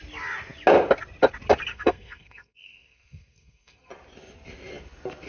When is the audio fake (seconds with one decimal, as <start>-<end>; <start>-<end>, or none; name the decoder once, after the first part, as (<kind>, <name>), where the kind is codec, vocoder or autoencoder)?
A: 1.7-3.9 (codec, SNAC)